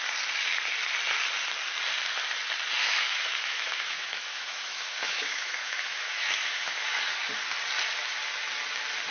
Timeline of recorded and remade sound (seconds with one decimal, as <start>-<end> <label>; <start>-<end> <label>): 0.0-2.8 recorded; 2.8-7.0 remade; 7.0-9.1 recorded